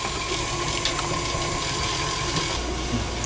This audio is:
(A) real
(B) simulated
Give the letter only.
A